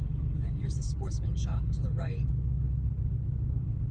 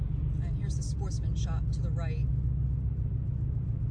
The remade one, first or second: first